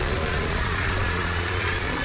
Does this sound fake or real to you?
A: fake